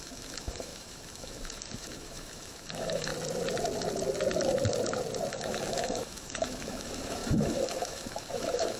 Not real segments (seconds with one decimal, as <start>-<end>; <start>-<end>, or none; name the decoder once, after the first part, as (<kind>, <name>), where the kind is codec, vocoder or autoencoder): 0.0-3.1 (autoencoder, DAC-VAE); 5.3-8.8